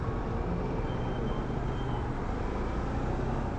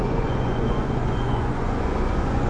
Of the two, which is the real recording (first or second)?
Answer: first